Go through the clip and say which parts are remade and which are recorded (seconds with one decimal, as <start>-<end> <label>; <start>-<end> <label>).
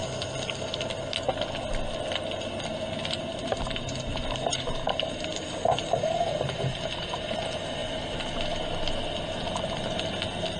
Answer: 0.0-3.3 recorded; 3.3-7.3 remade; 7.3-10.6 recorded